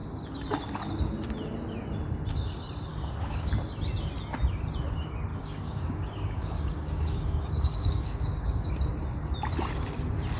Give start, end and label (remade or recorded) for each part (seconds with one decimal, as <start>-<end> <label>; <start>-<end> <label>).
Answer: 0.0-2.9 recorded; 2.9-3.5 remade; 3.5-5.3 recorded; 5.3-8.7 remade; 8.7-10.4 recorded